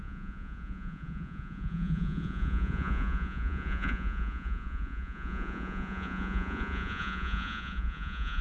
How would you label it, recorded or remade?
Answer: remade